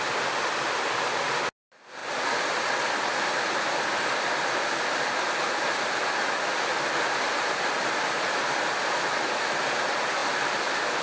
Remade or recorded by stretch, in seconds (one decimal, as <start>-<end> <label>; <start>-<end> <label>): 0.0-11.0 recorded